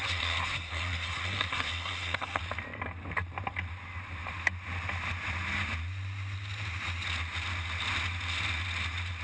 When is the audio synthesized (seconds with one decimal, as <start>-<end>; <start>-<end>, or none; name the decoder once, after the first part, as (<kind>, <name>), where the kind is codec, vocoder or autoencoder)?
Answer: 0.0-2.4 (codec, SNAC)